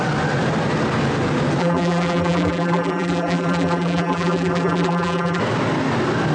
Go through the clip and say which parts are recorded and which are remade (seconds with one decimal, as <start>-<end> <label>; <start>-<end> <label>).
0.0-1.6 recorded; 1.6-5.4 remade; 5.4-6.3 recorded